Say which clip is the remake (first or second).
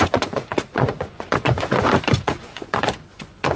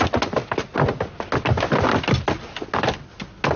first